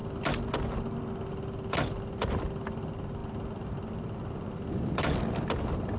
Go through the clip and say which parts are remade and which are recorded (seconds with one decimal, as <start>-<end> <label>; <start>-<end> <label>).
0.0-6.0 recorded